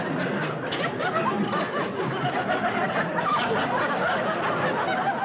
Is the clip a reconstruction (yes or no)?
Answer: no